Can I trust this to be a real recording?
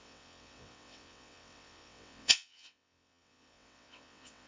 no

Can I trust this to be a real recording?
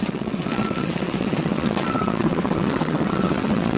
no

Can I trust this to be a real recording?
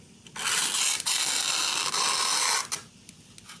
yes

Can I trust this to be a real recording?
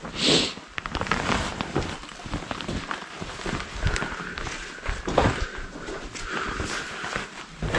yes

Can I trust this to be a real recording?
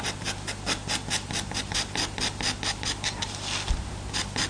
yes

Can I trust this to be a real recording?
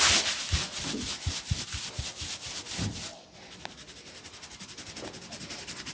yes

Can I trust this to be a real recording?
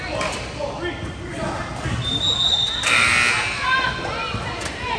yes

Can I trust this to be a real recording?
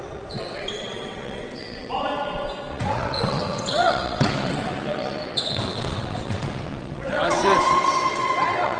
no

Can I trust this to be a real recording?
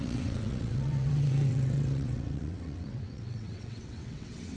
no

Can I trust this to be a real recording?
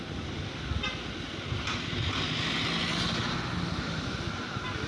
yes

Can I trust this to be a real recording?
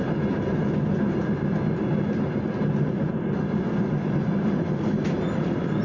yes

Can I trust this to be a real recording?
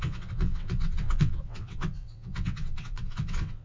no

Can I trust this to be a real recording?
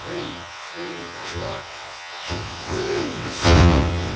no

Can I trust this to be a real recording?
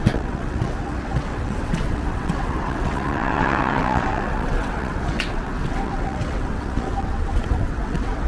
no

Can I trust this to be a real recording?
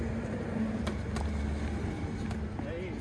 yes